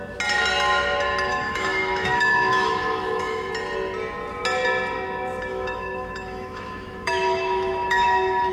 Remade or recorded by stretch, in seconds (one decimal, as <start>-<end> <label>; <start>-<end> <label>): 0.0-1.3 recorded; 1.3-3.5 remade; 3.5-5.5 recorded; 5.5-8.5 remade